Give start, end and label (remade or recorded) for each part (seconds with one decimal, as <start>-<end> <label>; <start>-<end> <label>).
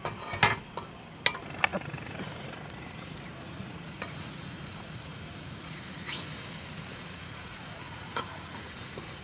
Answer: 0.0-1.7 recorded; 1.7-6.4 remade; 6.4-6.9 recorded; 6.9-9.2 remade